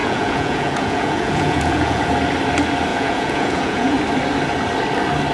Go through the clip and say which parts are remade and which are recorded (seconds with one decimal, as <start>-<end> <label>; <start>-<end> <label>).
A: 0.0-2.0 remade; 2.0-2.9 recorded; 2.9-4.0 remade; 4.0-5.3 recorded